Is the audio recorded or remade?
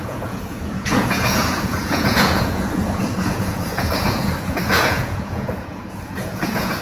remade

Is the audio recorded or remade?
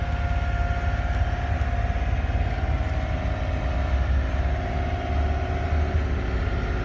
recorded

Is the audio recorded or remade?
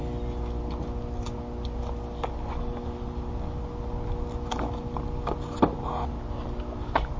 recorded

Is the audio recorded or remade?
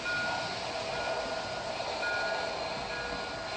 recorded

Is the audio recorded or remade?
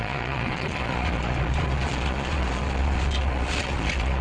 remade